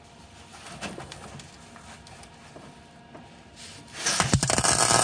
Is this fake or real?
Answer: real